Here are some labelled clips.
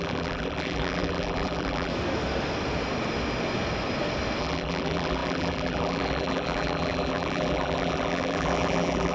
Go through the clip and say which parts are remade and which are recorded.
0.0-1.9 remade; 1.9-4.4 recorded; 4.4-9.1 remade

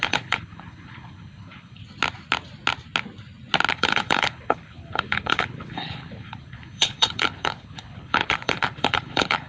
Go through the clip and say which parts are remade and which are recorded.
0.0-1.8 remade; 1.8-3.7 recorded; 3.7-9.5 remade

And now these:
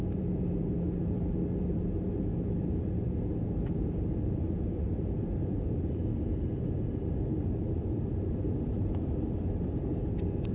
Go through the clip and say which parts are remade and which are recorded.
0.0-10.5 remade